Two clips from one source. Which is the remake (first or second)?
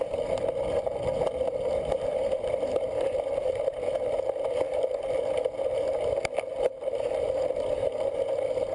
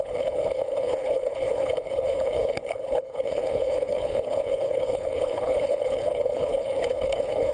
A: second